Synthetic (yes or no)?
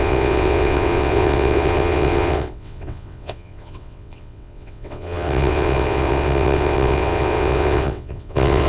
yes